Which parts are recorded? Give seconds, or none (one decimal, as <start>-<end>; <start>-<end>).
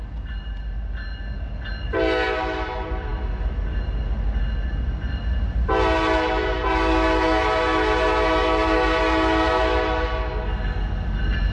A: 0.0-11.5